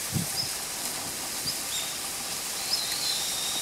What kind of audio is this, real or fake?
real